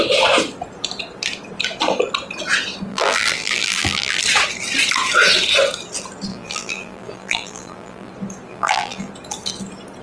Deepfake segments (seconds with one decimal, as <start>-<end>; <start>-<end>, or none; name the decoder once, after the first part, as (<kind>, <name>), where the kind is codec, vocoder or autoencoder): 2.9-4.2 (vocoder, BigVGAN v2); 6.3-8.1; 8.5-9.1